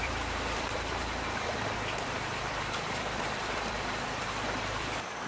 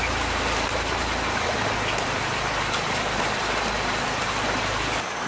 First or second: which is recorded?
second